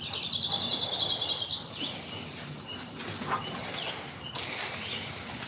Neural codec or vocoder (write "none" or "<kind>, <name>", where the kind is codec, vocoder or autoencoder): none